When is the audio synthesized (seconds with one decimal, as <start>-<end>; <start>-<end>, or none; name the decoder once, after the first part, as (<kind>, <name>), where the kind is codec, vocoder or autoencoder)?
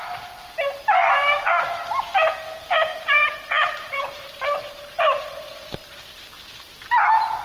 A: 1.0-1.5 (vocoder, BigVGAN v2); 2.9-5.7